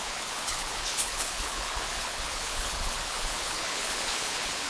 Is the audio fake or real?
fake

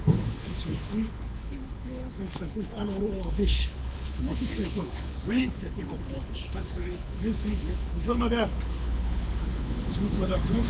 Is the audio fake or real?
fake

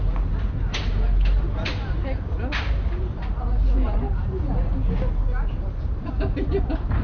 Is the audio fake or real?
real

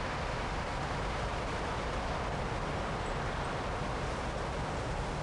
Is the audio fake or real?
real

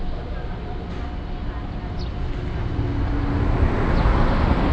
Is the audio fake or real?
real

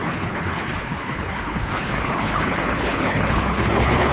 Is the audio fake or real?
fake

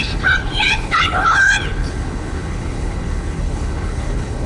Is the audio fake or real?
fake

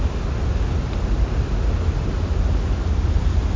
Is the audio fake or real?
real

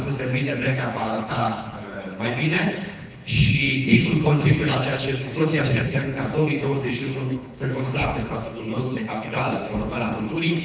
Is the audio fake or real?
fake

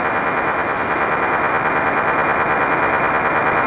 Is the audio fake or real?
real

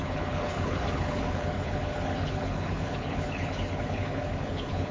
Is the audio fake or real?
fake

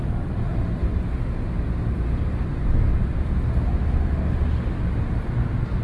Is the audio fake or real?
real